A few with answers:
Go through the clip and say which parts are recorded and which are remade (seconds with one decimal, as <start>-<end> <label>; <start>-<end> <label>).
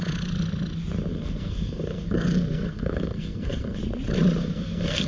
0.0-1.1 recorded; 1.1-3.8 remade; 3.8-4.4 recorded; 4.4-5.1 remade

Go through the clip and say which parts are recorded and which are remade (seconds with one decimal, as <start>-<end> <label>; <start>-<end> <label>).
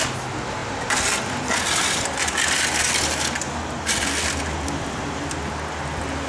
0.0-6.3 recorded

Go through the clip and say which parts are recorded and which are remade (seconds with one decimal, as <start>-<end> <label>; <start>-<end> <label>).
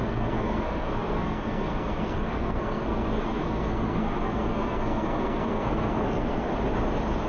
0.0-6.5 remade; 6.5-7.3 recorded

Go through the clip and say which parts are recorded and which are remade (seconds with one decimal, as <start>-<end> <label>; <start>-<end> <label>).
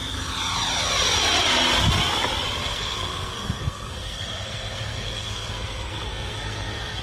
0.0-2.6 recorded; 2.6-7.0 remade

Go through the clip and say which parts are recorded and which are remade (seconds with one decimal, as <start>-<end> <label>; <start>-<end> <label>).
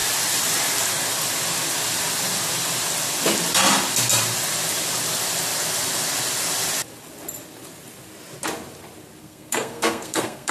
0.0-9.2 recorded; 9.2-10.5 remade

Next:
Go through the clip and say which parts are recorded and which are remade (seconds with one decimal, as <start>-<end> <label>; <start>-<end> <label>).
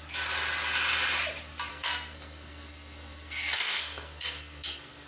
0.0-1.7 recorded; 1.7-5.1 remade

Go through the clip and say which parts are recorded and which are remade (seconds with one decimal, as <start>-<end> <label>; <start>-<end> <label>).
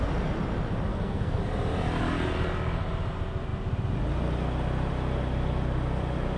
0.0-0.9 recorded; 0.9-1.4 remade; 1.4-6.4 recorded